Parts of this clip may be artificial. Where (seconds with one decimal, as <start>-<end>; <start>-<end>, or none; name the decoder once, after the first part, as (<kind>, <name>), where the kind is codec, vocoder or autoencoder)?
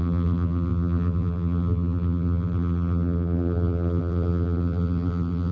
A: 0.0-5.5 (vocoder, BigVGAN v2)